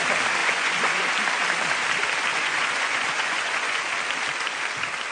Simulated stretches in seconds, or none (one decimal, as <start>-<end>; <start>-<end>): 0.4-1.1; 2.3-3.9